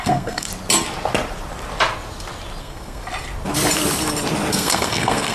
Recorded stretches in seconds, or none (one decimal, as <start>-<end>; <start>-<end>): 0.5-2.6; 3.0-4.5